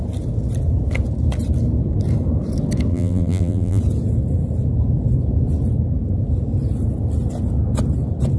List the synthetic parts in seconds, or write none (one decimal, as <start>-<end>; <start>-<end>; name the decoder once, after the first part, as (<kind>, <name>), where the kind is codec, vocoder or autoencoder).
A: 2.9-3.8 (vocoder, BigVGAN v2)